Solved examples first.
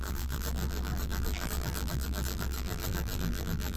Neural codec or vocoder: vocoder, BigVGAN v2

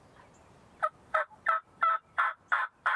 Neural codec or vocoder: none